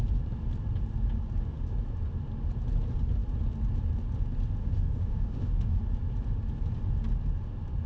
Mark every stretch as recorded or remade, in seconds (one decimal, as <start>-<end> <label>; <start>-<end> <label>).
0.0-4.6 recorded; 4.6-5.8 remade; 5.8-7.9 recorded